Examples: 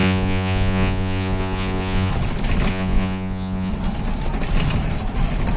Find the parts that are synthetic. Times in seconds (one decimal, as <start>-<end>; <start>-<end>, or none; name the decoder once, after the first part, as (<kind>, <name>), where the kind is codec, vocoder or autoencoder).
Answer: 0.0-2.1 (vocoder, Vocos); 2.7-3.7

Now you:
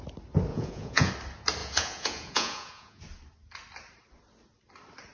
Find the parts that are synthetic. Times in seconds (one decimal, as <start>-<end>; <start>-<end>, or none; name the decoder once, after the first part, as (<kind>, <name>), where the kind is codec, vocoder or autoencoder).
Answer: 0.5-1.1 (vocoder, Vocos); 1.6-3.0

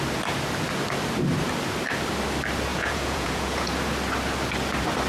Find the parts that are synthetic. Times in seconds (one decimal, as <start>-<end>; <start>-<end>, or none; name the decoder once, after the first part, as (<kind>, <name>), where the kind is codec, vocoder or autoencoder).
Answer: 2.7-3.8 (vocoder, Vocos)

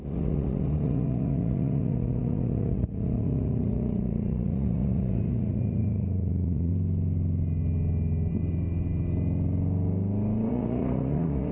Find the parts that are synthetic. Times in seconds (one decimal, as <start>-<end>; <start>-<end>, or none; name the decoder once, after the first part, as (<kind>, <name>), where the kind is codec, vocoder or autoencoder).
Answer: 0.0-6.7 (vocoder, Vocos); 10.5-11.5

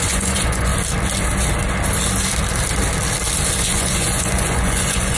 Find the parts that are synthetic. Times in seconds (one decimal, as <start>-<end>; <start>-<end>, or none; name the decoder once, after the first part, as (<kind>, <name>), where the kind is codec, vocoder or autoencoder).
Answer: 0.0-0.7 (vocoder, Vocos); 3.6-5.2

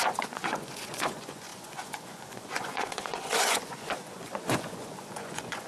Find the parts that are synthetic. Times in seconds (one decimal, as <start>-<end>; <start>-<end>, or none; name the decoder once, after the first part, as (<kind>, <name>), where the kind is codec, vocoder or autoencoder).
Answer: 0.0-5.7 (vocoder, Vocos)

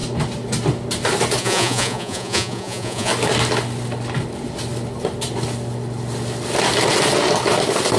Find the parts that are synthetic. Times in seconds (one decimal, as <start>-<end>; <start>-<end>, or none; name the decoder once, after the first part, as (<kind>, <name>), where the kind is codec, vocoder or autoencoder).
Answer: 1.4-3.1 (vocoder, Vocos)